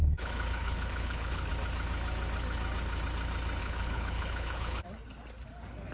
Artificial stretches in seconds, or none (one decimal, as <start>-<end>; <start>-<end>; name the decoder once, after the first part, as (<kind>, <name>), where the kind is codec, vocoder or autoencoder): 0.0-1.5 (codec, HILCodec); 3.6-4.8